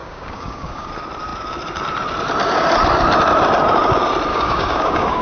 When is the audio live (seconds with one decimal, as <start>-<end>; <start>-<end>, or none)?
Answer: 0.9-4.3